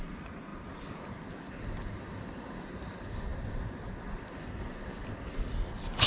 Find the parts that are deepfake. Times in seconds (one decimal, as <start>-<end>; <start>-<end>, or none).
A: none